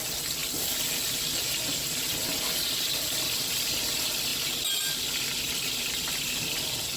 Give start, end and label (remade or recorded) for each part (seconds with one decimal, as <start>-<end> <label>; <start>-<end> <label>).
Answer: 0.0-7.0 recorded